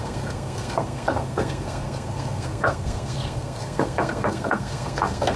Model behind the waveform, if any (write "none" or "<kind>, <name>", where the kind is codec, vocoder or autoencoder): codec, SNAC